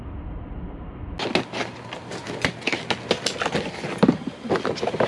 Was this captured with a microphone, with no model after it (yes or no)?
yes